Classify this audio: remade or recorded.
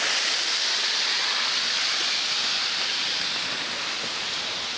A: recorded